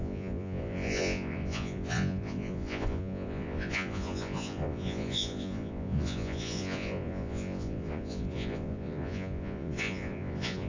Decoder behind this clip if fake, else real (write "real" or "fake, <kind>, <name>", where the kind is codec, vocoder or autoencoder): fake, vocoder, Vocos